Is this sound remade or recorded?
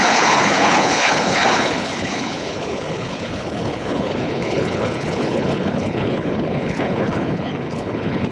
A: remade